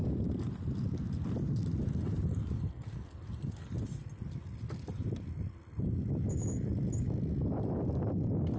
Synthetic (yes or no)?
no